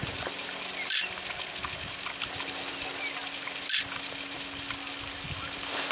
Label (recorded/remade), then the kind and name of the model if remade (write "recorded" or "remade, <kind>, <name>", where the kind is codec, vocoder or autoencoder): recorded